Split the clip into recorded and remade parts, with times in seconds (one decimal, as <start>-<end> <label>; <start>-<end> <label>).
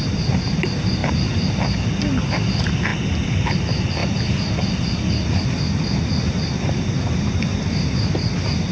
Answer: 0.0-8.7 recorded